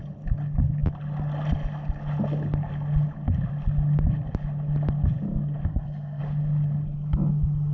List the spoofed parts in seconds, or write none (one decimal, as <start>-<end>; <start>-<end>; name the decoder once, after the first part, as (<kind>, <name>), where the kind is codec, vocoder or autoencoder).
5.7-6.2 (codec, SNAC)